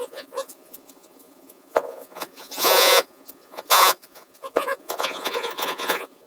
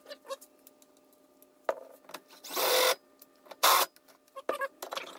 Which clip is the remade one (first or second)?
first